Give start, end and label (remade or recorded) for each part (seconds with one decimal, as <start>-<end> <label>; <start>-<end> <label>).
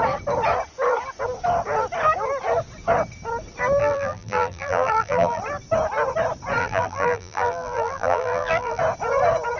0.0-3.8 recorded; 3.8-5.4 remade; 5.4-6.6 recorded; 6.6-8.8 remade; 8.8-9.6 recorded